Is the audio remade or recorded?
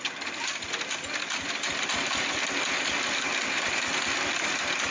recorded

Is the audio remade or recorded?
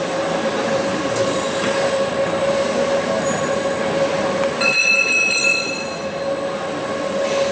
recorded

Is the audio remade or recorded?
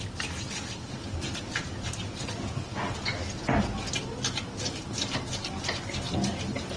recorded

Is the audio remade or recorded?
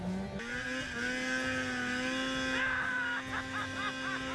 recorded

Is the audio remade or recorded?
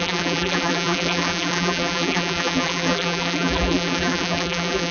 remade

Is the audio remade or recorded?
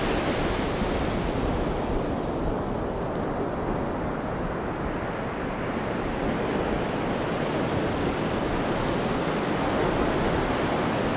recorded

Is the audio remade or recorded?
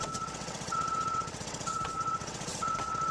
remade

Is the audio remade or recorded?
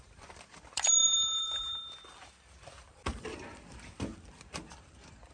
remade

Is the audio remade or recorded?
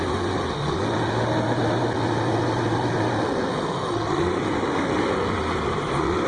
recorded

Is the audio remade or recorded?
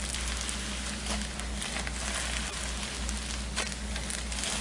recorded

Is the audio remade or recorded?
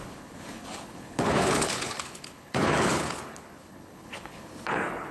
remade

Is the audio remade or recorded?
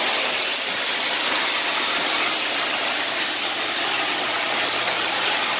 remade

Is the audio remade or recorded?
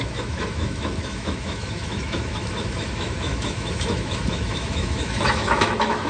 remade